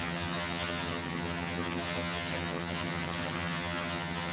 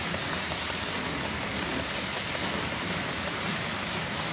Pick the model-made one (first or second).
first